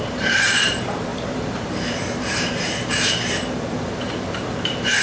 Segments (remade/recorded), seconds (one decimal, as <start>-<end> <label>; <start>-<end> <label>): 0.0-5.0 remade